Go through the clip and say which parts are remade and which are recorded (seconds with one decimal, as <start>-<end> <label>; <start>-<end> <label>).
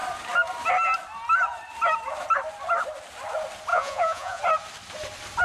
0.0-3.7 recorded; 3.7-4.4 remade; 4.4-5.4 recorded